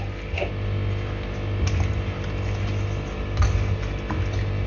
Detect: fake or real real